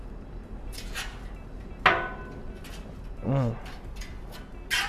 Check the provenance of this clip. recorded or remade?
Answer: recorded